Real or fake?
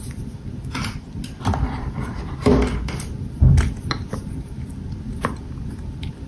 fake